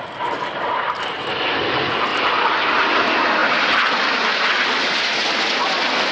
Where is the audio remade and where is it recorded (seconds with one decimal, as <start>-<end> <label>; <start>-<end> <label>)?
0.0-2.1 recorded; 2.1-2.8 remade; 2.8-5.2 recorded; 5.2-6.1 remade